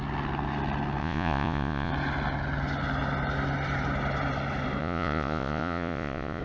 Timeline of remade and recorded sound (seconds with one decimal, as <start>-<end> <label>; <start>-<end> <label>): 0.0-1.0 recorded; 1.0-1.9 remade; 1.9-4.8 recorded; 4.8-6.4 remade